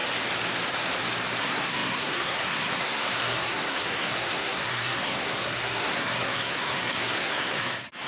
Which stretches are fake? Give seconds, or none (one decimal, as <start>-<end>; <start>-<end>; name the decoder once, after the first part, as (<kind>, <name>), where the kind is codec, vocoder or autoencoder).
1.4-8.1 (codec, SNAC)